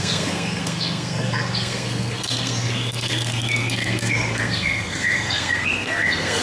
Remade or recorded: remade